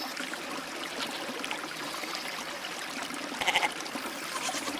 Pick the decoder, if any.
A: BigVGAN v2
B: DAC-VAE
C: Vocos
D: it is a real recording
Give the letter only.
A